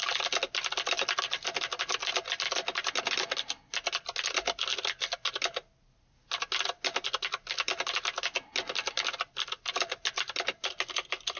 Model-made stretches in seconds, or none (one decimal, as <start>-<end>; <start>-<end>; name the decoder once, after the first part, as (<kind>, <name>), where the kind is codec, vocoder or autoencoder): none